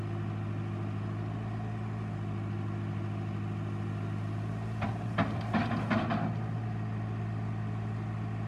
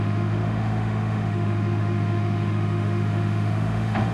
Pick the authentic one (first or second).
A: first